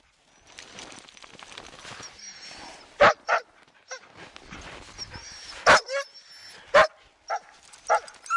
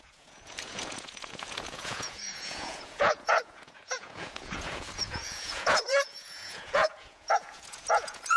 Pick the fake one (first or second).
second